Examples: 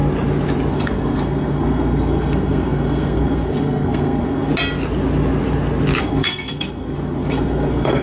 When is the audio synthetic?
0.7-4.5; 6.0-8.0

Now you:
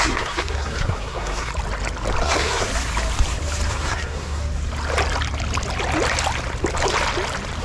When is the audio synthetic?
0.0-1.5; 2.2-2.7; 3.7-4.4

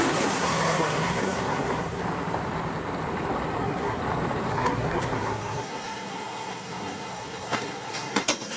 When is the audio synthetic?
0.0-2.0; 3.6-4.0; 4.5-8.6

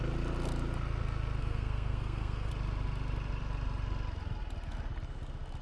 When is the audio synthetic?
1.4-2.5

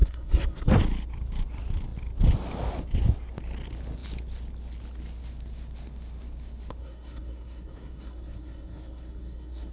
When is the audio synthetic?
0.0-0.8; 6.8-9.7